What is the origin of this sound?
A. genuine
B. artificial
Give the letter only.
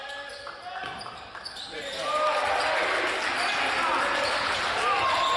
A